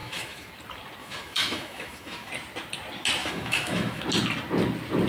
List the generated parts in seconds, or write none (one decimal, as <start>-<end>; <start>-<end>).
0.0-0.5; 1.0-2.3; 3.2-4.0